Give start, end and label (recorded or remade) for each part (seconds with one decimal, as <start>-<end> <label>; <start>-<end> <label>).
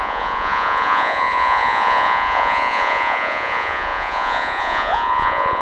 0.0-5.6 remade